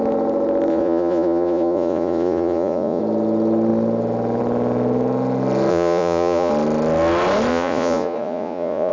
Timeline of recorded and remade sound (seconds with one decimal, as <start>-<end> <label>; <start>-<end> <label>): 0.0-0.7 recorded; 0.7-3.0 remade; 3.0-5.7 recorded; 5.7-6.5 remade; 6.5-7.5 recorded; 7.5-8.9 remade